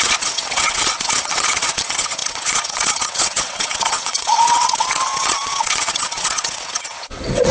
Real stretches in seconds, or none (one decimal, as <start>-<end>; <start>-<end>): none